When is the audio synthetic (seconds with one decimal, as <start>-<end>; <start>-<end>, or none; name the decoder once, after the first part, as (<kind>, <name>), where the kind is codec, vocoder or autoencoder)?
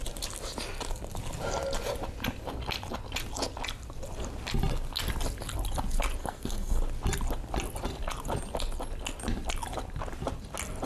6.2-6.8 (codec, SNAC)